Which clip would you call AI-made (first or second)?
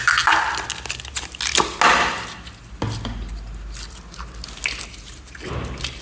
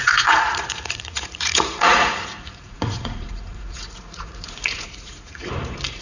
second